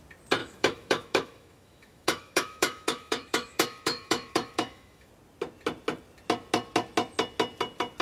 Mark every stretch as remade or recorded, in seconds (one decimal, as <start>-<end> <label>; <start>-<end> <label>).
0.0-0.4 recorded; 0.4-5.1 remade; 5.1-8.0 recorded